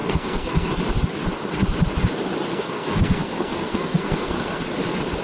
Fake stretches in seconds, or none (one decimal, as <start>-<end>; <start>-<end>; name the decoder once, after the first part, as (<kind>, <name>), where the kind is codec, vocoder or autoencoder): 0.0-0.7 (codec, SNAC); 2.5-4.6